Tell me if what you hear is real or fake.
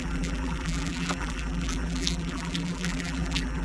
fake